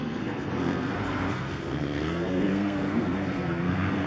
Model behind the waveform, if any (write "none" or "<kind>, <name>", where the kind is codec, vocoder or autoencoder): codec, SNAC